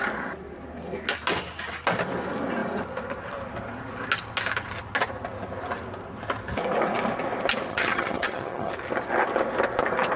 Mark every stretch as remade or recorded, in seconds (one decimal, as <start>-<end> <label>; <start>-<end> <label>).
0.0-7.7 recorded; 7.7-8.7 remade; 8.7-10.2 recorded